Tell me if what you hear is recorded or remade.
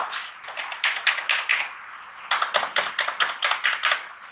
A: recorded